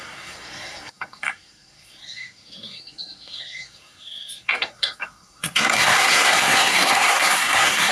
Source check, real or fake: fake